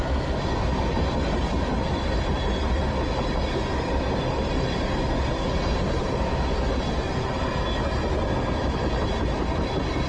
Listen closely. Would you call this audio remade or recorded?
recorded